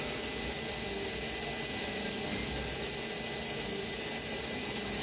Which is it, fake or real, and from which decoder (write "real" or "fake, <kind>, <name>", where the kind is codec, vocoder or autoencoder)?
real